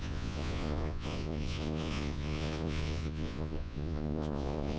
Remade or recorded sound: remade